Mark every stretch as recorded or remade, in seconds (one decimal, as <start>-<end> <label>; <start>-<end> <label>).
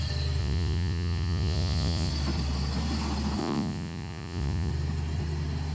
0.0-0.4 recorded; 0.4-2.1 remade; 2.1-3.4 recorded; 3.4-4.7 remade; 4.7-5.7 recorded